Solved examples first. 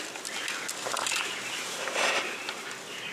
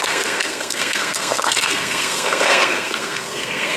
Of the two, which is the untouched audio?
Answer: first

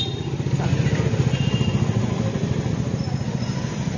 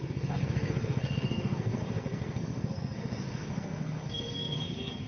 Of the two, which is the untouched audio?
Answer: first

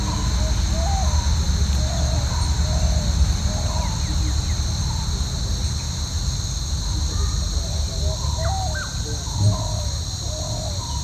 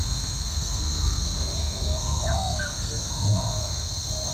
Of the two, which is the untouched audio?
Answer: first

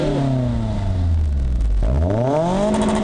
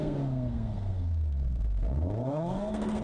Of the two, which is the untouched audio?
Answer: first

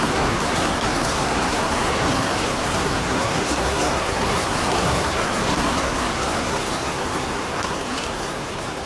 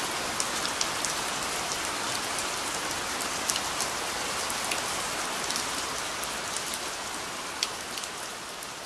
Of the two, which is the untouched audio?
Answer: second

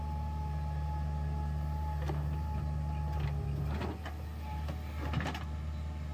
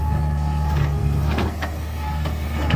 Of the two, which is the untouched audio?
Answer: first